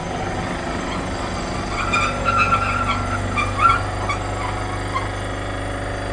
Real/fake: real